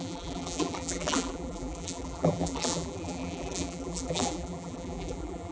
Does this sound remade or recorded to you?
remade